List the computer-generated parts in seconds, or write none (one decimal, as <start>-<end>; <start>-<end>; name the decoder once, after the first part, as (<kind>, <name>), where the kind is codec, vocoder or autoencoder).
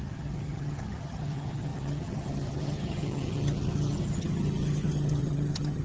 0.0-5.8 (vocoder, HiFi-GAN)